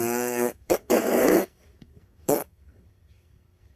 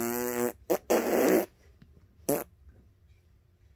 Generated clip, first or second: first